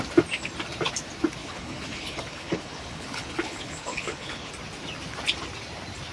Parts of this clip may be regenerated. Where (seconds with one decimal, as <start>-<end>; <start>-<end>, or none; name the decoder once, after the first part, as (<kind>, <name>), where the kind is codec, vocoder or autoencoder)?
1.4-4.5 (codec, HILCodec)